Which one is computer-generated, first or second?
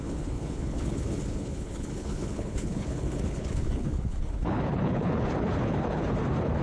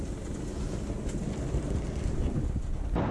first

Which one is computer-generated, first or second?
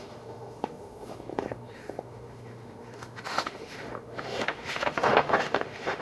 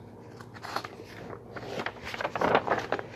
first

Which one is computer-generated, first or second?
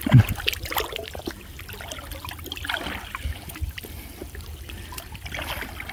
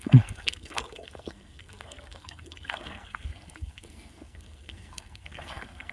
second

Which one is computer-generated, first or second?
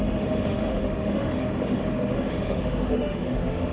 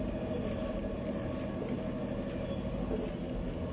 first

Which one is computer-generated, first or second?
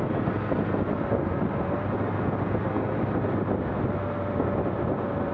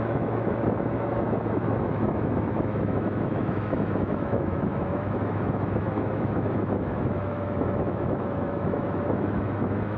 second